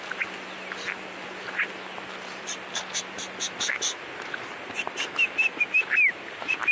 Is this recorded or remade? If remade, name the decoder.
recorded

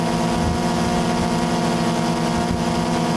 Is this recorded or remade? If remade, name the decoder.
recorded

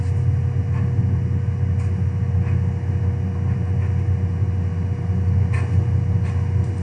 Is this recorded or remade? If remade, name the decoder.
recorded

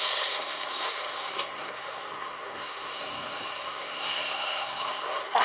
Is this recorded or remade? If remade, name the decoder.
remade, codec, SNAC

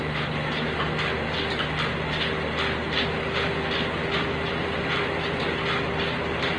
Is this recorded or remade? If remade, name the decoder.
recorded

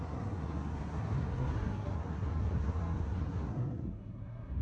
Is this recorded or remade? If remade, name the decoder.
remade, codec, SNAC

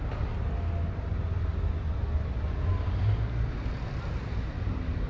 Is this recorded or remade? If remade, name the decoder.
recorded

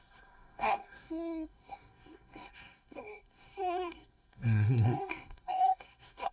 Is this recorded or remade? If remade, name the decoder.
remade, codec, SNAC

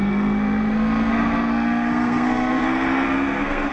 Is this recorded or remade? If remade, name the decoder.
remade, codec, SNAC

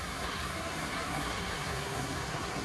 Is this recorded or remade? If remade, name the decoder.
remade, codec, SNAC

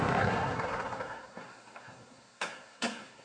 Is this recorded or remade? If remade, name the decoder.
remade, codec, SNAC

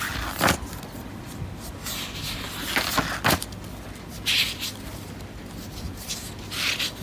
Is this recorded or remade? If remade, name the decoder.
recorded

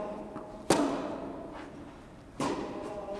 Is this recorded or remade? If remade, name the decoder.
recorded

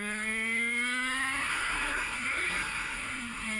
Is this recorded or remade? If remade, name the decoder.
remade, codec, SNAC